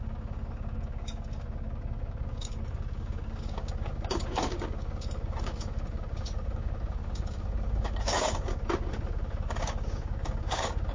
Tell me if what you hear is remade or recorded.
remade